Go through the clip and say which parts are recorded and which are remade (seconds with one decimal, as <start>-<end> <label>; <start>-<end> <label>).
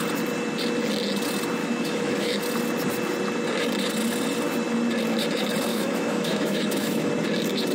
0.0-1.6 recorded; 1.6-2.4 remade; 2.4-5.7 recorded; 5.7-7.1 remade; 7.1-7.7 recorded